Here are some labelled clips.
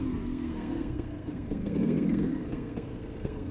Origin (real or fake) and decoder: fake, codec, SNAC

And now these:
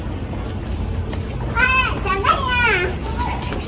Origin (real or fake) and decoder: real